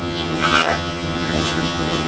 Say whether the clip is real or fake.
fake